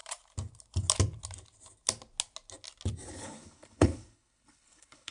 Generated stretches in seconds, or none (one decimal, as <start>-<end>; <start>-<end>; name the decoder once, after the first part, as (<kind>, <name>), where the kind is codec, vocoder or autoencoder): 3.1-5.1 (codec, HILCodec)